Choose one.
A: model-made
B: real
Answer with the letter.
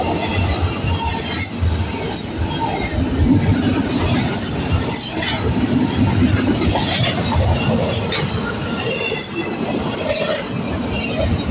B